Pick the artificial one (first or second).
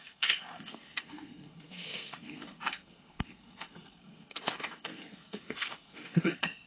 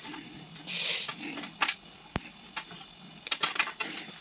first